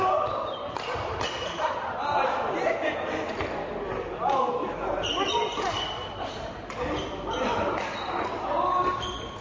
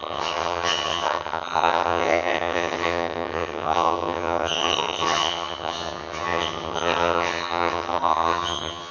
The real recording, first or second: first